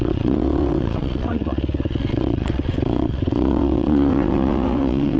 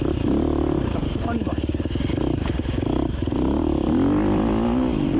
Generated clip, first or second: first